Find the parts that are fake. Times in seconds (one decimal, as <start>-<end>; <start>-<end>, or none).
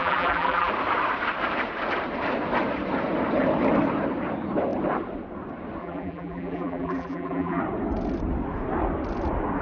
0.0-0.7; 5.8-7.6